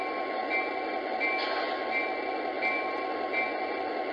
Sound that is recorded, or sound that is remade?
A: recorded